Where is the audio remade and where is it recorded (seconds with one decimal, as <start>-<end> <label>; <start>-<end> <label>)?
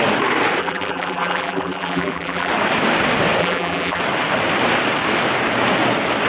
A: 0.0-0.6 recorded; 0.6-2.5 remade; 2.5-3.4 recorded; 3.4-4.0 remade; 4.0-6.3 recorded